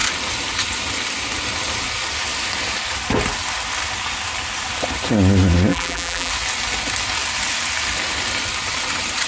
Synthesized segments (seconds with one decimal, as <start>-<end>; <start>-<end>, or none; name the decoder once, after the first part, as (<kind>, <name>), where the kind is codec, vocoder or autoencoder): 5.7-6.3 (vocoder, BigVGAN v2)